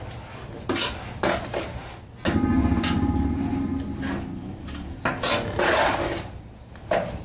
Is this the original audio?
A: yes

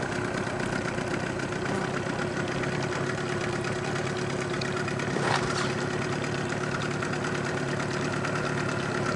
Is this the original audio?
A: yes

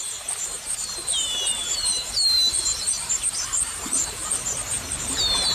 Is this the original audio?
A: no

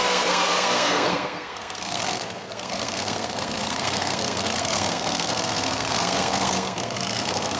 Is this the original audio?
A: no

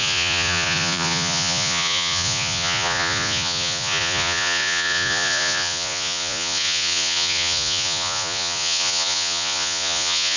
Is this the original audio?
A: no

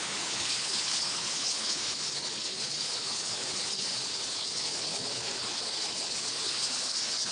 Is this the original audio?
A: no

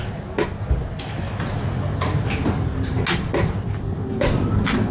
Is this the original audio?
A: yes